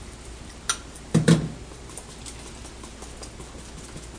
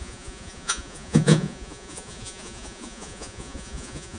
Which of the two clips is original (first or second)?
first